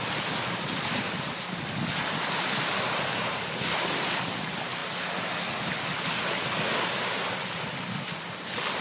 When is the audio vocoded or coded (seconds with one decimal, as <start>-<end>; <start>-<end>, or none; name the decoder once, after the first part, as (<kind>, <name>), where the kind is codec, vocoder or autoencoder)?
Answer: none